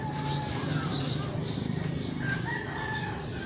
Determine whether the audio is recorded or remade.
remade